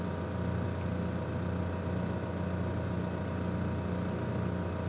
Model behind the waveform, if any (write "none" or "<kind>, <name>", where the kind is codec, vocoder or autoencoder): none